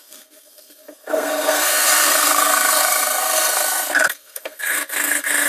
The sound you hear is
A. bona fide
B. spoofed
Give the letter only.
B